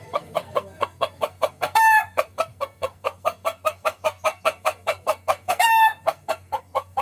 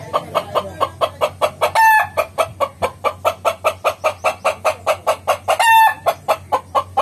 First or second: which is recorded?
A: second